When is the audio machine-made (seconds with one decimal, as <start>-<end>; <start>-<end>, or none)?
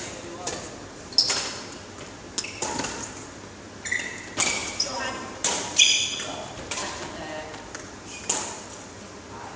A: 4.6-5.8